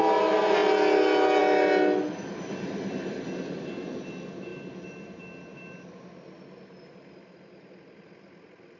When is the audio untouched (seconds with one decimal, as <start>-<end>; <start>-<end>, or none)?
0.0-8.8